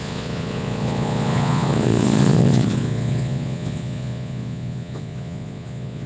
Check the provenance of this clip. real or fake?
fake